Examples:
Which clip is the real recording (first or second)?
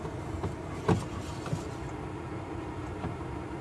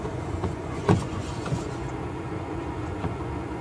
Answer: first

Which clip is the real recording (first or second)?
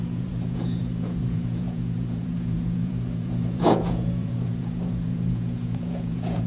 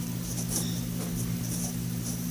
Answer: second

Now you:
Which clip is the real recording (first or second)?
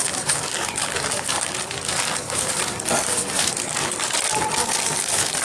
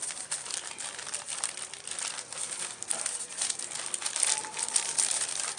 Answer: second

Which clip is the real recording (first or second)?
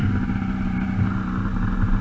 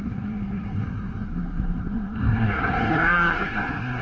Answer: first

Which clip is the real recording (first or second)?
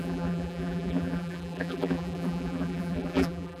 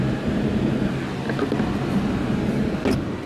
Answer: second